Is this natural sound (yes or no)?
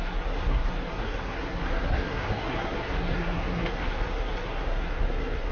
no